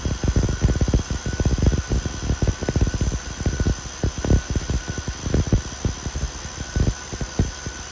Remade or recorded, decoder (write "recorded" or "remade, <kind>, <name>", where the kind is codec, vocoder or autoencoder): recorded